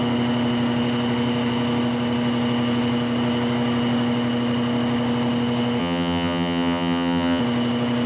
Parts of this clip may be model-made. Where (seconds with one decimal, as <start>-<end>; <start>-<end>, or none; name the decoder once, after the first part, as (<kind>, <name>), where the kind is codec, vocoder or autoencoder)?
5.8-7.4 (vocoder, HiFi-GAN)